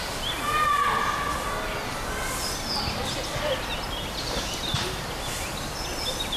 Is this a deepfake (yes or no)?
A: no